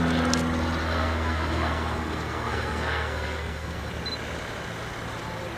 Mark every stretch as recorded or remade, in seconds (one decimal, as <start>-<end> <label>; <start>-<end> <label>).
0.0-0.8 recorded; 0.8-3.9 remade; 3.9-5.6 recorded